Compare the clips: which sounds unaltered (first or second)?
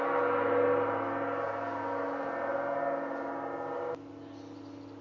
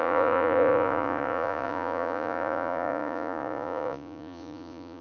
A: first